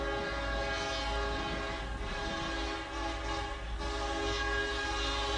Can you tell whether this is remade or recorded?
recorded